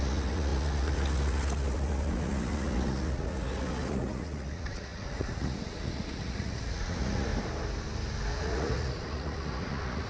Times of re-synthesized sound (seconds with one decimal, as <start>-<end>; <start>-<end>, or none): 0.0-7.3; 8.4-10.1